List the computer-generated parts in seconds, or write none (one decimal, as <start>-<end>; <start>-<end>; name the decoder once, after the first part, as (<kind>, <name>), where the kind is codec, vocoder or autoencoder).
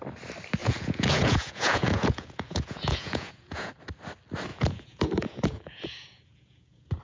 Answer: 0.6-3.7 (vocoder, Vocos); 4.5-7.0